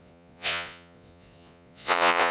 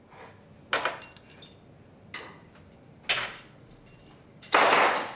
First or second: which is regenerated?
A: first